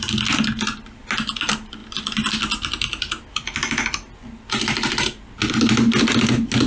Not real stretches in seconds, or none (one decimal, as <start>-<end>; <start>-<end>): none